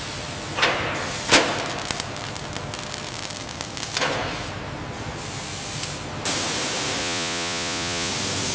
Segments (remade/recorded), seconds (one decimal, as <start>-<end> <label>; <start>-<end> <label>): 0.0-7.0 recorded; 7.0-8.1 remade; 8.1-8.5 recorded